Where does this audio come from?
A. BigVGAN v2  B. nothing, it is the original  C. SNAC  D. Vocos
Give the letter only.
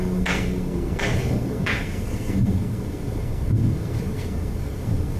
C